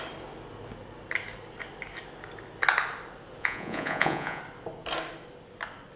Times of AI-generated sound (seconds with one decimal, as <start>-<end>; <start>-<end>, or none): 3.4-4.4